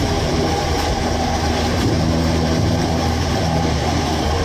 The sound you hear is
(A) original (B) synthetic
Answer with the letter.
B